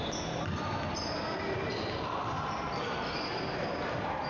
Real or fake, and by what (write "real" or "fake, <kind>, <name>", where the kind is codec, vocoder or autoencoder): real